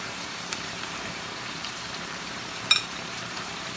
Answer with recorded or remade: remade